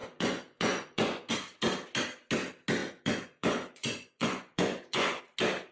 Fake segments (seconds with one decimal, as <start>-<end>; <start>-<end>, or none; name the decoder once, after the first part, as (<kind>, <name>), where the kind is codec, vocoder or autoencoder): 0.0-1.3 (vocoder, Vocos); 2.8-5.2